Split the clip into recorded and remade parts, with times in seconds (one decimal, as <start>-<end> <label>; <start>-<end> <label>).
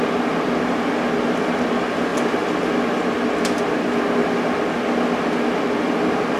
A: 0.0-6.4 recorded